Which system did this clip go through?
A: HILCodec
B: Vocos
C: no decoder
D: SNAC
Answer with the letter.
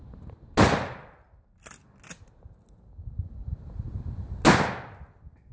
C